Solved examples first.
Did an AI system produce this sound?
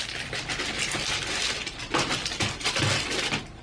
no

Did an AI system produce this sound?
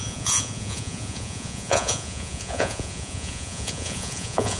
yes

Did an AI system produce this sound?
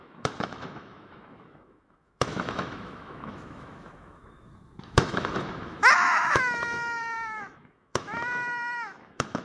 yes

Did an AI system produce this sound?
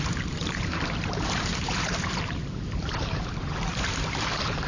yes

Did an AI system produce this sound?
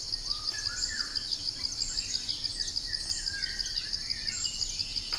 no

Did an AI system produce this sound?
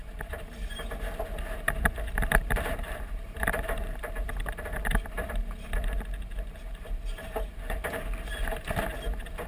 yes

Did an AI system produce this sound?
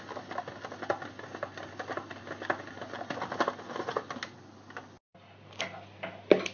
no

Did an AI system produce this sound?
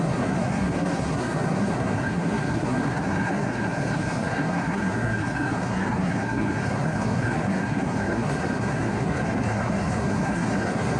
yes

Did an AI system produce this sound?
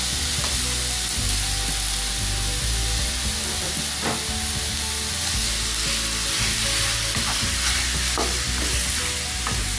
no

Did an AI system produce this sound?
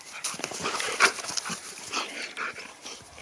no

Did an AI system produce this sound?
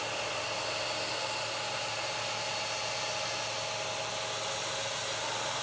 no